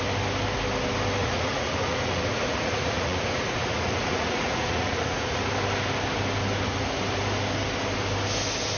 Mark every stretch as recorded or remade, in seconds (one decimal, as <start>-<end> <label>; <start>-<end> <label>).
0.0-1.2 recorded; 1.2-5.4 remade; 5.4-8.8 recorded